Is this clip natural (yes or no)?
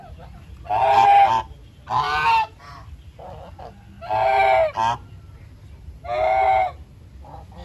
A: yes